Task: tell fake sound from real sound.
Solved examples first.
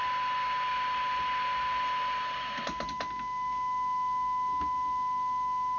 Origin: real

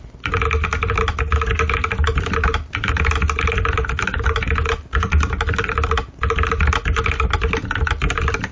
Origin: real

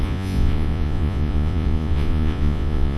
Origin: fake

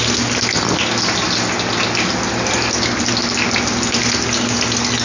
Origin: real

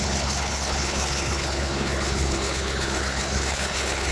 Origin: fake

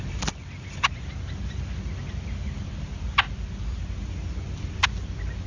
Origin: real